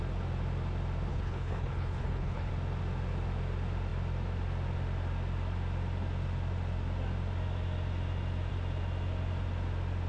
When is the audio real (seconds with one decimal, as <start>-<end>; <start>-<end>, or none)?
0.0-1.1; 2.5-10.1

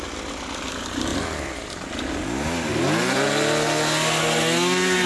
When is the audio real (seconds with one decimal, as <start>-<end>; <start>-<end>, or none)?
0.0-5.1

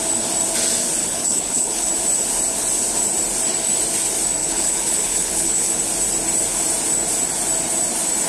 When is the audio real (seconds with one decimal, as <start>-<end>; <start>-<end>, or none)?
0.0-1.0; 1.9-4.4; 5.8-8.3

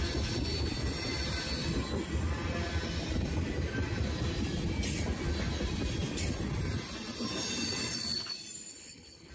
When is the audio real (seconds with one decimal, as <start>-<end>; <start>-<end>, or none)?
0.0-8.7

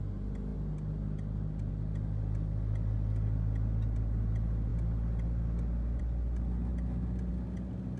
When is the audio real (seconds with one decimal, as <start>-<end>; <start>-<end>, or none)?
0.0-8.0